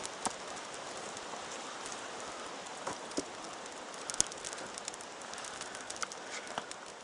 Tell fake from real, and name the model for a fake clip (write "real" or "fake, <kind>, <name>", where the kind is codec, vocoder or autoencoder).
real